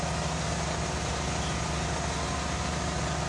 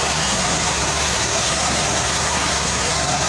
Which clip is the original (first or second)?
first